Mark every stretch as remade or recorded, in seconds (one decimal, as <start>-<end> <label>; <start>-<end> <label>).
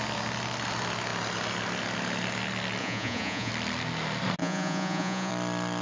0.0-2.8 recorded; 2.8-3.5 remade; 3.5-4.4 recorded; 4.4-5.3 remade; 5.3-5.8 recorded